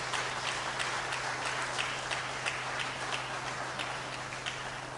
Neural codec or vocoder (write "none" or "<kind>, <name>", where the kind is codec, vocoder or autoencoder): none